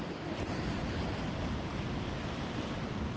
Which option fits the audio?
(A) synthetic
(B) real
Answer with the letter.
A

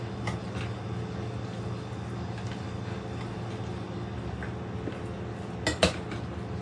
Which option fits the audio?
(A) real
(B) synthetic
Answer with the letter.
A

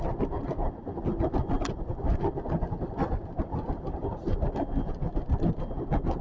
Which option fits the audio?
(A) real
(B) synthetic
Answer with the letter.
A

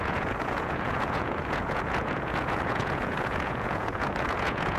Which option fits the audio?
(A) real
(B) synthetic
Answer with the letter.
B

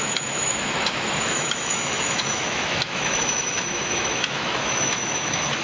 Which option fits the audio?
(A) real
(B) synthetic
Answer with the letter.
B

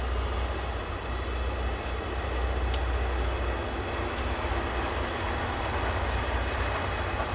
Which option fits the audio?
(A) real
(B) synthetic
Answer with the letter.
A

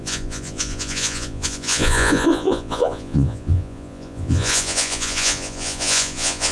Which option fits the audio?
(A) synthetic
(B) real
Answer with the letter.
A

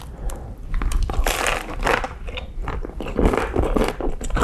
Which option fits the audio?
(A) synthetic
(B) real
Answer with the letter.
A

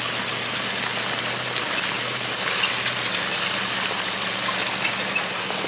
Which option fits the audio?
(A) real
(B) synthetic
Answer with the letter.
A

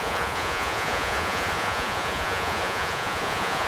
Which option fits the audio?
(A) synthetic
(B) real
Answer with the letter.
A